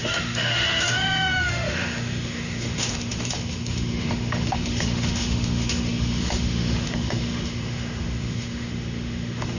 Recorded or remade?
remade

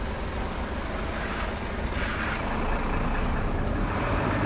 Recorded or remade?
recorded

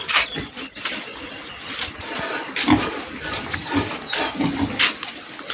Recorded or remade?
recorded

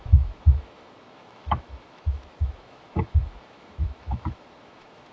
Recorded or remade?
remade